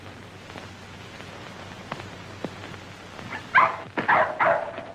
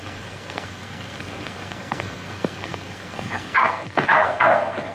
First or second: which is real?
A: first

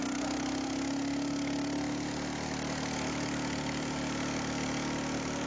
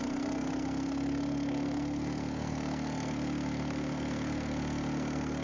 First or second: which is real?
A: first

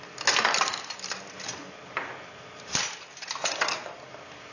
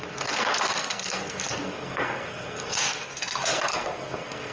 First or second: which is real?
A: first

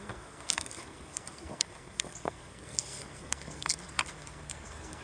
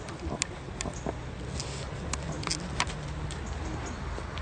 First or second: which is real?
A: second